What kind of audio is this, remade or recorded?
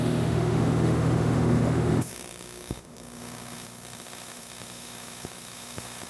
remade